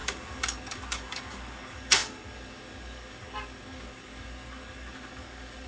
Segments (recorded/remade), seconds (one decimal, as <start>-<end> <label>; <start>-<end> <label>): 0.0-5.7 remade